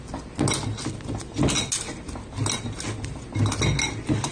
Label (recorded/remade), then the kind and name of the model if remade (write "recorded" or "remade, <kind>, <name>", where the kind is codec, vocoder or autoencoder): recorded